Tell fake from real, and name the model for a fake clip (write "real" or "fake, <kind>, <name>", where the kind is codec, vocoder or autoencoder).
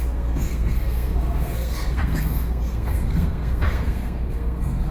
fake, codec, SNAC